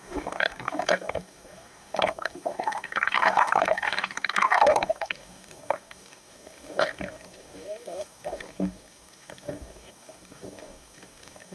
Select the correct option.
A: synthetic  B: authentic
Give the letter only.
A